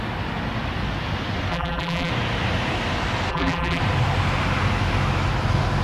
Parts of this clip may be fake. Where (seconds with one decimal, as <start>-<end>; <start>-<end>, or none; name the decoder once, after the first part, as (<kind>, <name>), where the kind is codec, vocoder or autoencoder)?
1.5-2.1 (vocoder, BigVGAN v2); 3.3-3.8